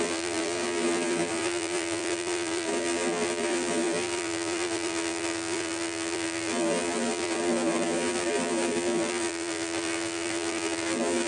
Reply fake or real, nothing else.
fake